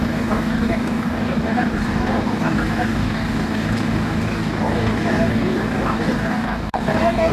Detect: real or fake fake